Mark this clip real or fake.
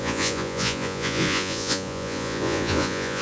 fake